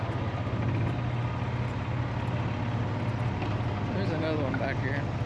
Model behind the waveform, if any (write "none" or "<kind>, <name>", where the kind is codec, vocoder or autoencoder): none